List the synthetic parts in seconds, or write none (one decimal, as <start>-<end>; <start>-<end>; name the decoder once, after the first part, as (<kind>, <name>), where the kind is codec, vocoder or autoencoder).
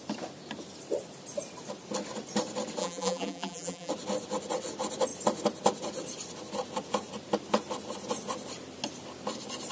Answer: 2.8-3.9 (vocoder, BigVGAN v2)